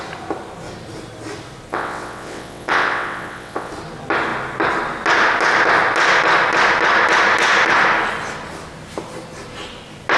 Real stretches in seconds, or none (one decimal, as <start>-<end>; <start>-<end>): 0.0-1.7; 3.7-10.2